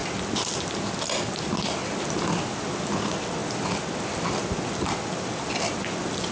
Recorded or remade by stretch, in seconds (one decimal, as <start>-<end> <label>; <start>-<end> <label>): 0.0-6.3 recorded